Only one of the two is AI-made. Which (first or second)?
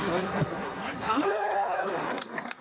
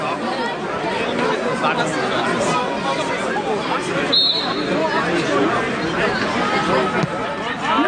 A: first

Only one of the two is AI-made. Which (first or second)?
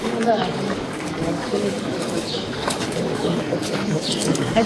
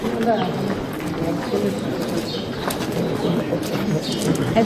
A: first